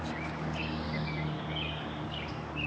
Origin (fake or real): fake